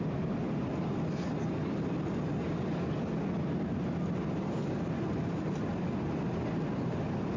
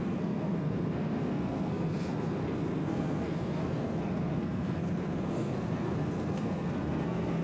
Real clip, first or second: first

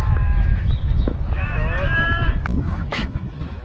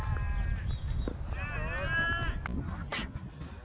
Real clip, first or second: second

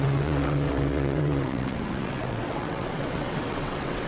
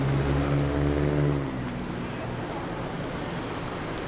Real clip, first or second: second